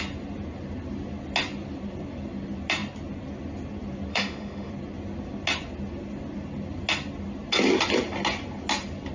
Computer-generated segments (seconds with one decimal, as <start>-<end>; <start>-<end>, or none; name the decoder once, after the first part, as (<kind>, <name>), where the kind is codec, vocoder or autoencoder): 4.1-4.7 (autoencoder, DAC-VAE)